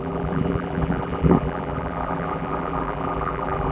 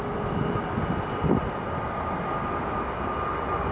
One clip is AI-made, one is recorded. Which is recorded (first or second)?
second